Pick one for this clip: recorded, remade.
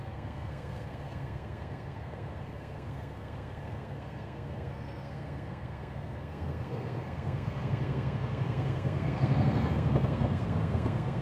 remade